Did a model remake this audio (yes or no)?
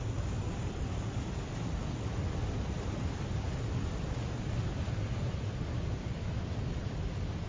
no